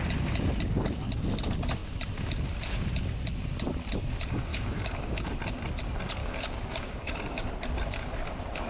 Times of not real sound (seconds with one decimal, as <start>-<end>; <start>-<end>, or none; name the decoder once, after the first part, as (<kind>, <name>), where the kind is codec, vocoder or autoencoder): 4.5-5.3 (codec, DAC); 6.2-7.5